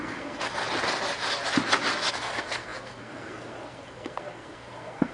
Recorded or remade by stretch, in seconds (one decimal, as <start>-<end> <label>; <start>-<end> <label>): 0.0-0.6 remade; 0.6-2.1 recorded; 2.1-5.1 remade